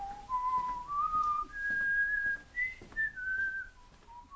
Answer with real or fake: real